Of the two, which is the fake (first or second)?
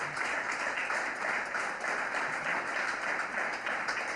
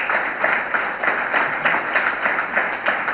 first